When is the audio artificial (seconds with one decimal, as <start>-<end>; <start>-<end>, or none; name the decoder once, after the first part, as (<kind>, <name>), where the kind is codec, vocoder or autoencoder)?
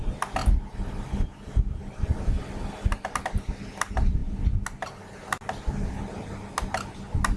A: none